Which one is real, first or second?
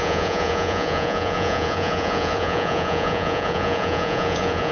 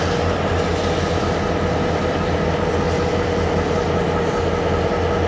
second